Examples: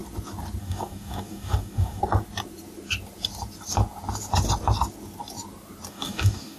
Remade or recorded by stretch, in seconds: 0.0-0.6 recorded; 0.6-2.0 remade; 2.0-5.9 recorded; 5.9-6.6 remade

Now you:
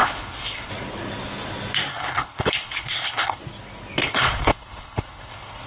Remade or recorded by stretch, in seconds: 0.0-0.7 remade; 0.7-1.9 recorded; 1.9-3.4 remade; 3.4-4.0 recorded; 4.0-5.7 remade

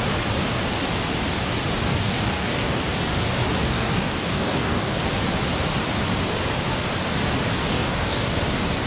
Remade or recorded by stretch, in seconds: 0.0-1.9 recorded; 1.9-2.8 remade; 2.8-3.6 recorded; 3.6-5.0 remade; 5.0-7.6 recorded; 7.6-8.3 remade; 8.3-8.9 recorded